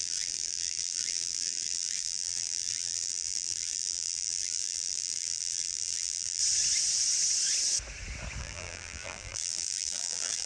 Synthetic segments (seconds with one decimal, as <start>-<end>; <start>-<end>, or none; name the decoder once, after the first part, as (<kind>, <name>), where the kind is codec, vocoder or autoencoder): 0.0-6.4 (vocoder, BigVGAN v2); 8.4-10.5